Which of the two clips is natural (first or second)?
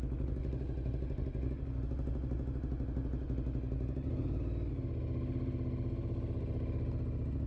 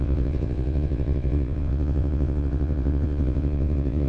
first